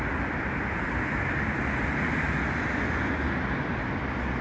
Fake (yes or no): no